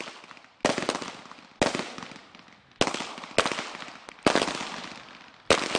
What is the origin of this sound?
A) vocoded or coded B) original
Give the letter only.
B